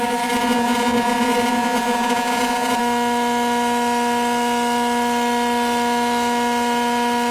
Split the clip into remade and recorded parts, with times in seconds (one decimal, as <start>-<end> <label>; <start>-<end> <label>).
0.0-2.8 remade; 2.8-7.3 recorded